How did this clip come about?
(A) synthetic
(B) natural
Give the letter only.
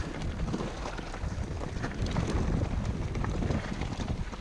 B